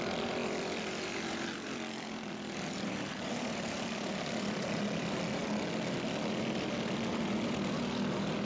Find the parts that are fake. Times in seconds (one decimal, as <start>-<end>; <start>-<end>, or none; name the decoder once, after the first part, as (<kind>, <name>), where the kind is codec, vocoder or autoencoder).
0.4-4.8 (vocoder, BigVGAN v2)